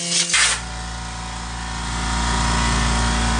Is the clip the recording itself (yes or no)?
yes